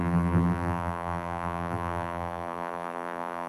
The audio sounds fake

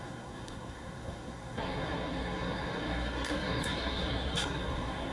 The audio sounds fake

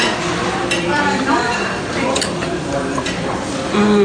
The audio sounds fake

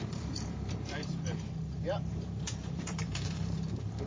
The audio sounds fake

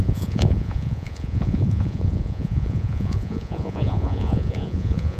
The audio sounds fake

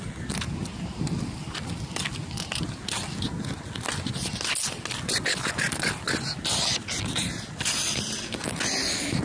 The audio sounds real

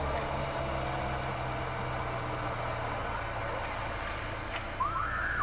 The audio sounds real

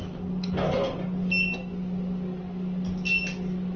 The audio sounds real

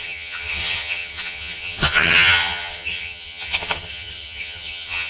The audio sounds fake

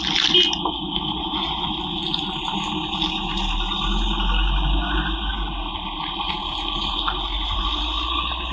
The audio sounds real